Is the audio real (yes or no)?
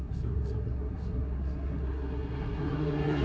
no